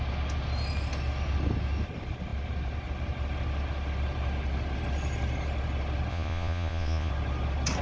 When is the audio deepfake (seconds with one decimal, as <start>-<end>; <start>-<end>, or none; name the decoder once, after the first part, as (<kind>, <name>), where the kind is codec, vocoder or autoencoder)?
6.1-7.1 (vocoder, Vocos)